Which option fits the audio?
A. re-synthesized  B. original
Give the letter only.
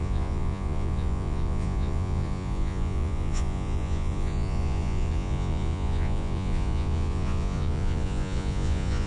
A